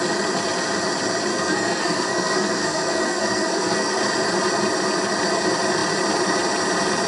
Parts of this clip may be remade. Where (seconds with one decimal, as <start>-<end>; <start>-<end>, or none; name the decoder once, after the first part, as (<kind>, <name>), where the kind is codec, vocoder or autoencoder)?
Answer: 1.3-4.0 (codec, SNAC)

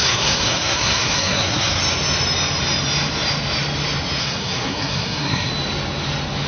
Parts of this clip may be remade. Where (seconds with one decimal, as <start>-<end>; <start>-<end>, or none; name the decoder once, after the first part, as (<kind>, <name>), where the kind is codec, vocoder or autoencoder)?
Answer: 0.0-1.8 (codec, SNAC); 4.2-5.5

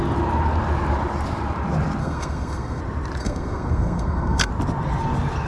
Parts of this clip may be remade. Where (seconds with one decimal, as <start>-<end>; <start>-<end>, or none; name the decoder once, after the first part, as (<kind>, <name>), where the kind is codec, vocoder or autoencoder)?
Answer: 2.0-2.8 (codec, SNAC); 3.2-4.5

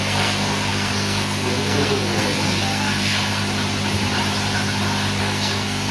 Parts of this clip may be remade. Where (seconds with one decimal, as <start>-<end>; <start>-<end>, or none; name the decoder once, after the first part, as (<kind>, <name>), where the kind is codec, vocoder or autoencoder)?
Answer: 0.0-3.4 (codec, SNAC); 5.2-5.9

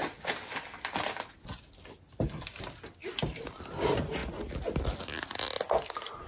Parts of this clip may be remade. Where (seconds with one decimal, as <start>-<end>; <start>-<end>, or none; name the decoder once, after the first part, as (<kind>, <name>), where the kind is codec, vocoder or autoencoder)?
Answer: none